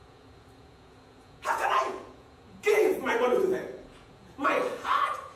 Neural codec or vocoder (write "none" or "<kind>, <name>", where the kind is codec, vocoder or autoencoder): vocoder, Vocos